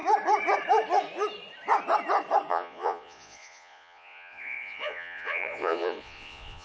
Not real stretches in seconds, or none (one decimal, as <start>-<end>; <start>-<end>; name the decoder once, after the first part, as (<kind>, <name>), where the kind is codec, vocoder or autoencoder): 2.5-6.6 (vocoder, Vocos)

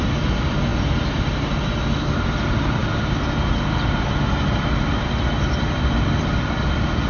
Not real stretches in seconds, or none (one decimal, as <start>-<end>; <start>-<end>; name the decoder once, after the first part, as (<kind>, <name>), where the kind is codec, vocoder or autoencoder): none

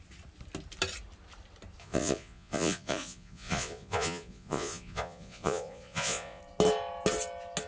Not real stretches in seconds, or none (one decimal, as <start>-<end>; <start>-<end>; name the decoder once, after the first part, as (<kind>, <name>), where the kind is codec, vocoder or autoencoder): 1.8-6.4 (vocoder, Vocos)

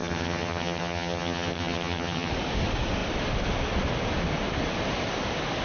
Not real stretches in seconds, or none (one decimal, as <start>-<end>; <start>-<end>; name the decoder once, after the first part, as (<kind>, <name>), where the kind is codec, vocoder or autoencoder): 0.0-2.3 (vocoder, HiFi-GAN)